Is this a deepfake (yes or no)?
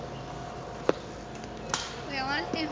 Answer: no